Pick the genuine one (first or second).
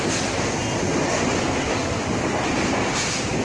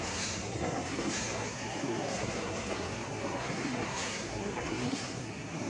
first